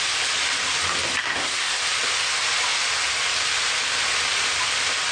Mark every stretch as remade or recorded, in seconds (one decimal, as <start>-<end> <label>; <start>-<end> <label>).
0.0-1.2 recorded; 1.2-1.8 remade; 1.8-5.1 recorded